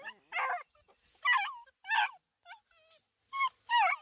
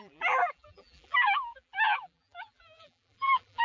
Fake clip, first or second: second